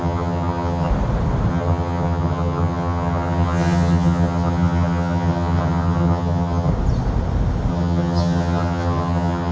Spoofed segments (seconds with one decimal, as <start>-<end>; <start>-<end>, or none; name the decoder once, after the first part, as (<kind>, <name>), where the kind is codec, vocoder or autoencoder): 0.0-0.9 (vocoder, HiFi-GAN); 1.5-6.7; 7.7-9.5